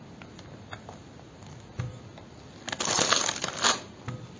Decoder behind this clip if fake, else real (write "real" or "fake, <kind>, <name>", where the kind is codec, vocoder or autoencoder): real